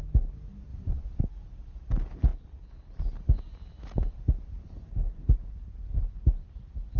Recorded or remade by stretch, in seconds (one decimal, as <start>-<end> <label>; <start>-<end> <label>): 0.0-0.7 recorded; 0.7-1.2 remade; 1.2-7.0 recorded